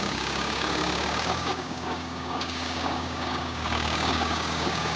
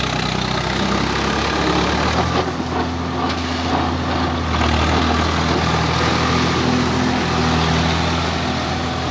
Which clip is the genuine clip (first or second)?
second